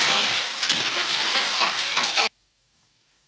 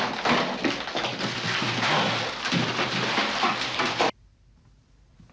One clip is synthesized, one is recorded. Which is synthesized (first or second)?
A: first